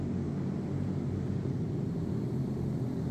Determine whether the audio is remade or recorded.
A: recorded